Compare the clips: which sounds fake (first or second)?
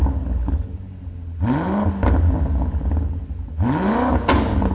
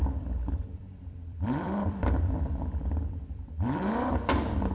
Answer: second